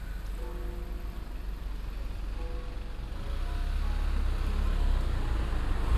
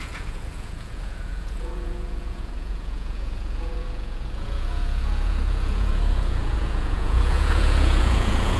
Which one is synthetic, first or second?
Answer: second